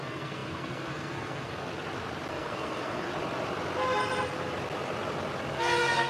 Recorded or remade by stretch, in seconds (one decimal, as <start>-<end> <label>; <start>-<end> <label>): 0.0-1.7 remade; 1.7-2.3 recorded; 2.3-3.1 remade; 3.1-5.5 recorded; 5.5-6.1 remade